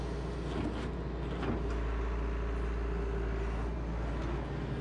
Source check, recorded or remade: recorded